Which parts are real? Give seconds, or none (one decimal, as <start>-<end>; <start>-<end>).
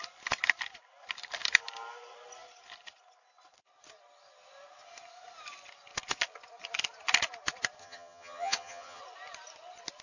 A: 0.0-7.8; 9.0-10.0